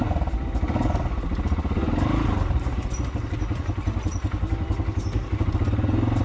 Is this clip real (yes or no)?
yes